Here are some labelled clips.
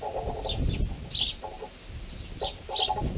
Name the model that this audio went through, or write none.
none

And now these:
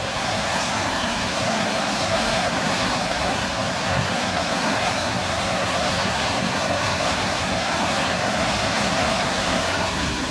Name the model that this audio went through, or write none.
codec, SNAC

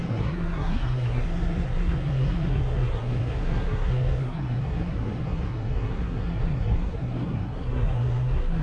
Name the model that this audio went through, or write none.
codec, SNAC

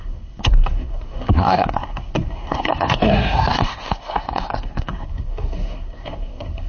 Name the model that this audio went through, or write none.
codec, SNAC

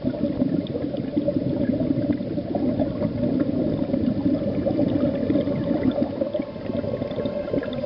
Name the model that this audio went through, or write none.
none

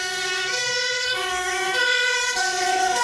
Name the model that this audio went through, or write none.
codec, SNAC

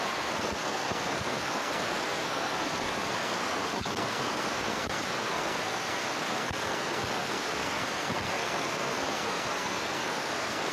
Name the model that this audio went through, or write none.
codec, SNAC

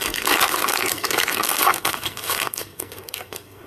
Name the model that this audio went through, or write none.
codec, SNAC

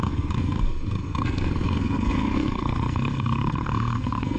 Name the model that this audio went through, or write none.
codec, SNAC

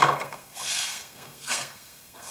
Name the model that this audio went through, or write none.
codec, SNAC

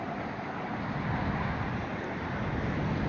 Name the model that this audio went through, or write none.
none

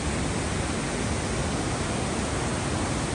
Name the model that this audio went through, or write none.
none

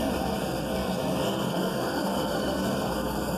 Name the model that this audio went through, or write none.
codec, SNAC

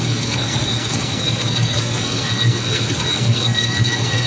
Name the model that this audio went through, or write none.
codec, SNAC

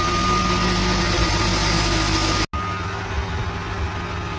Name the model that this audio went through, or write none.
none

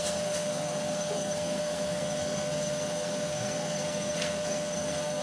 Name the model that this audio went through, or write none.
codec, SNAC